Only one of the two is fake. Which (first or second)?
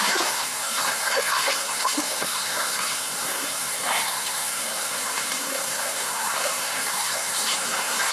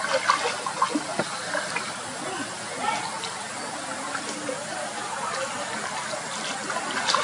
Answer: first